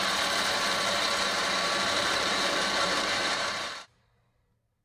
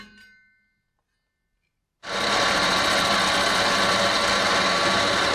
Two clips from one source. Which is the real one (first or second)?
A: second